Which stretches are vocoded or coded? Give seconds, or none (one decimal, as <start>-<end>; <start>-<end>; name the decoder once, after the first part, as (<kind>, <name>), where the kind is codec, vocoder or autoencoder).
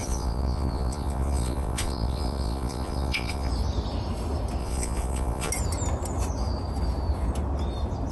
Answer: 0.0-3.5 (vocoder, Vocos); 4.6-5.5